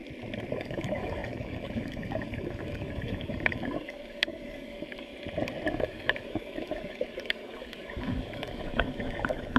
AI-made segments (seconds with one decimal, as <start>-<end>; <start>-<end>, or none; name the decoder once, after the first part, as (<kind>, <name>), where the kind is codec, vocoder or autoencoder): 0.5-5.1 (codec, DAC); 5.7-9.6